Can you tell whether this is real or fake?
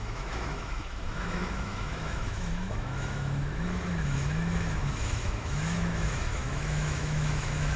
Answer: fake